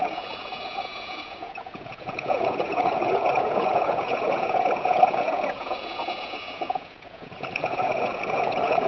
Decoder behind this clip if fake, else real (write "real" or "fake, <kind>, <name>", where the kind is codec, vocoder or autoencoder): fake, vocoder, Vocos